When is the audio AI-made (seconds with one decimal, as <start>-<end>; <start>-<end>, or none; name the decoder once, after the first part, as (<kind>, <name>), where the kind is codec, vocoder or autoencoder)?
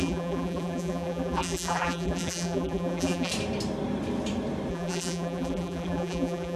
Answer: 0.0-3.3 (vocoder, BigVGAN v2); 4.7-6.6